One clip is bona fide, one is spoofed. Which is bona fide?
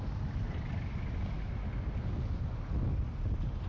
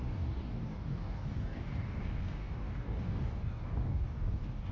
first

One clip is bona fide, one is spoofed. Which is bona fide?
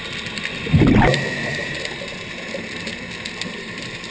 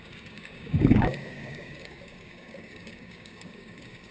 first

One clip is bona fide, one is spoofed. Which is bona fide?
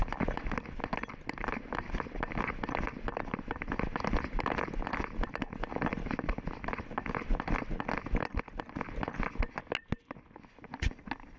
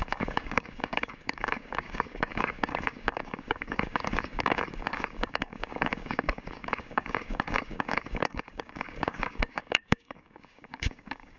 first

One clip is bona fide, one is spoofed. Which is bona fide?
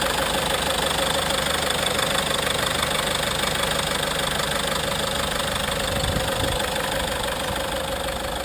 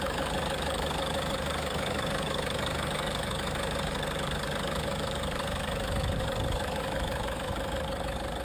first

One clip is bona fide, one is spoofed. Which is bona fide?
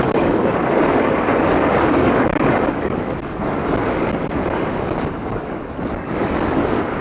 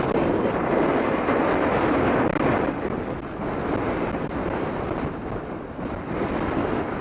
second